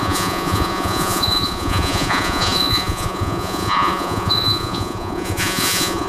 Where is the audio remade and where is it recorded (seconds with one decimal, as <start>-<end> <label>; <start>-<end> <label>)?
0.0-6.1 remade